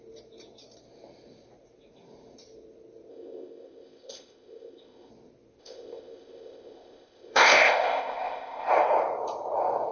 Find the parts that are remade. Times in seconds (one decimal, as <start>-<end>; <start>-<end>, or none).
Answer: 3.1-5.1; 5.6-8.7